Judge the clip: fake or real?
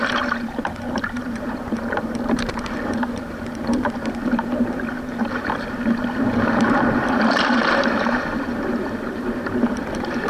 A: fake